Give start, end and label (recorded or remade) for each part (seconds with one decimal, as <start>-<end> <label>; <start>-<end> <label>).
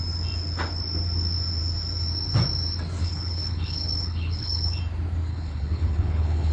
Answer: 0.0-3.0 recorded; 3.0-4.8 remade; 4.8-5.3 recorded; 5.3-6.5 remade